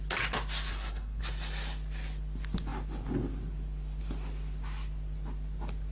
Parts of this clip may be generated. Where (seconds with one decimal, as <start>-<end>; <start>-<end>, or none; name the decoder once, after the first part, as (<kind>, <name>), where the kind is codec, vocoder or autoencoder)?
0.7-1.2 (codec, SNAC)